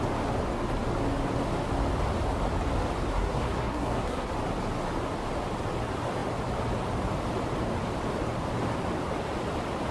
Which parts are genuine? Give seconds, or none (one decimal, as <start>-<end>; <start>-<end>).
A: 0.0-3.1; 4.3-9.9